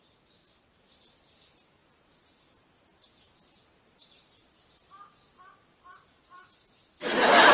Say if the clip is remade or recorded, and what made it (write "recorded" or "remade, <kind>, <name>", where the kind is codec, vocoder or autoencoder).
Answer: recorded